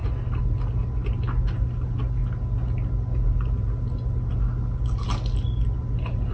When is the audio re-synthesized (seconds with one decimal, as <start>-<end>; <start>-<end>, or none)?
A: none